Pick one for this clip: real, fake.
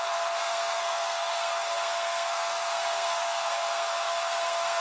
fake